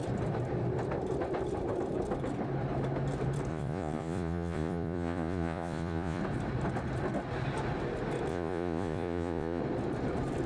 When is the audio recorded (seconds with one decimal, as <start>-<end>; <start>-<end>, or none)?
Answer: 0.0-3.5; 6.2-8.3; 9.6-10.5